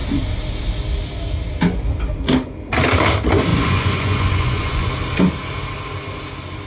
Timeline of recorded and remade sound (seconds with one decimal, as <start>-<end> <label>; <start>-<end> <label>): 0.0-3.5 recorded; 3.5-4.9 remade; 4.9-6.7 recorded